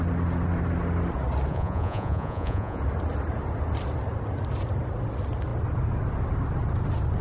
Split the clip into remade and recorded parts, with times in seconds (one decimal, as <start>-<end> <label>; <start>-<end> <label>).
0.0-1.5 recorded; 1.5-2.8 remade; 2.8-7.2 recorded